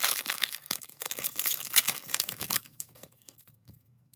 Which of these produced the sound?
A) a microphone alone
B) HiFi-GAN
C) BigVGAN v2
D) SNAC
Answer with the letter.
D